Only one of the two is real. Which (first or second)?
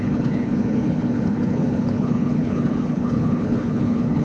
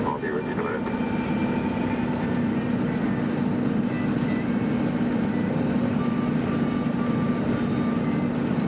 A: second